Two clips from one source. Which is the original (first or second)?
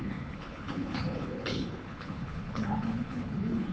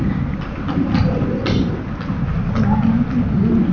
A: second